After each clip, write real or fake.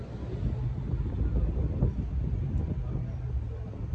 real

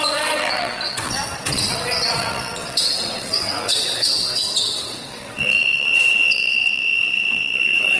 fake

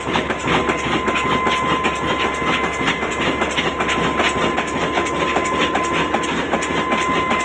real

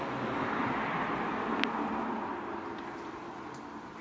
real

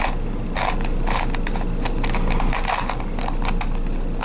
real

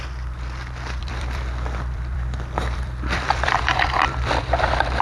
fake